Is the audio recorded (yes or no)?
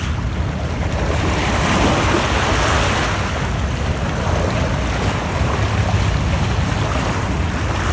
yes